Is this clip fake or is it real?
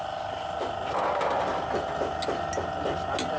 real